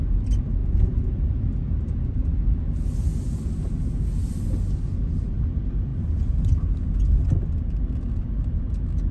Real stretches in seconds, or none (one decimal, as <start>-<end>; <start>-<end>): 0.0-9.1